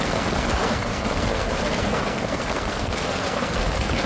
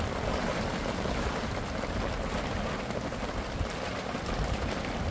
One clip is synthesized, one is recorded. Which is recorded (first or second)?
second